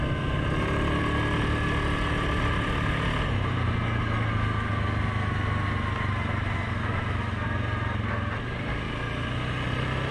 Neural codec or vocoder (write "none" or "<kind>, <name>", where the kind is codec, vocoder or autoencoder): none